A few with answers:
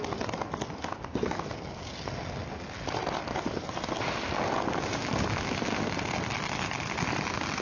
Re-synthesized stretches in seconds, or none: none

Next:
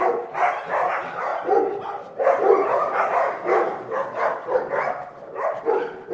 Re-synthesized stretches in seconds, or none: 2.8-4.4 (vocoder, BigVGAN v2)

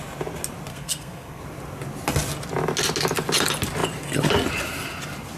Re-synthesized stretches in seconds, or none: 0.7-1.4 (codec, SNAC)